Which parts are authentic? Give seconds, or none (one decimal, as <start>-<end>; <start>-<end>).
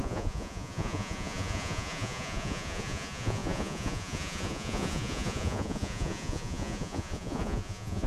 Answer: none